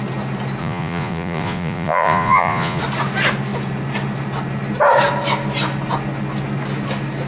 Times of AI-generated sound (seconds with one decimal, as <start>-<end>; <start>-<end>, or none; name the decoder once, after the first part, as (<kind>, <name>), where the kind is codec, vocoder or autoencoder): 0.6-2.8 (vocoder, Vocos)